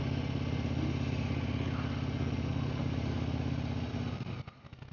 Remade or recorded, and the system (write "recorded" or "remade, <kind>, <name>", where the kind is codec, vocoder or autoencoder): recorded